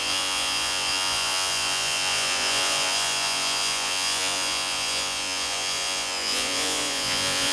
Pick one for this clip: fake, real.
fake